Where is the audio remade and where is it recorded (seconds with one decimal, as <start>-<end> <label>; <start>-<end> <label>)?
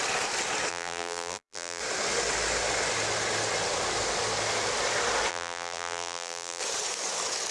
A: 0.0-0.7 recorded; 0.7-1.8 remade; 1.8-5.3 recorded; 5.3-6.6 remade; 6.6-7.5 recorded